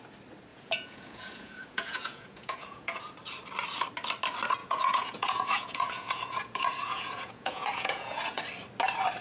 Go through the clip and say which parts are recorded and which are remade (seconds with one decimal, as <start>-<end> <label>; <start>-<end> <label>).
0.0-0.5 recorded; 0.5-3.0 remade; 3.0-4.6 recorded; 4.6-8.4 remade; 8.4-9.2 recorded